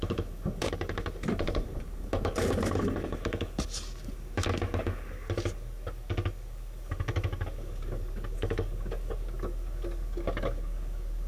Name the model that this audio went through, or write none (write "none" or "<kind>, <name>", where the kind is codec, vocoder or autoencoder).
codec, DAC